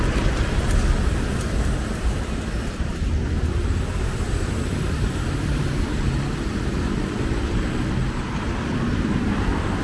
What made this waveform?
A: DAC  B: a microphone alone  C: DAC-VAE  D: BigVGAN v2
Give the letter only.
D